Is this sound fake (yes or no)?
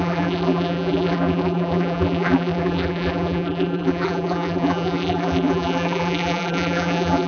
yes